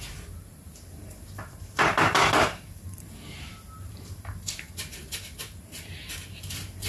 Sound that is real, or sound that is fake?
fake